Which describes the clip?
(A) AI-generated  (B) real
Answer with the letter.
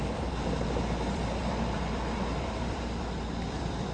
A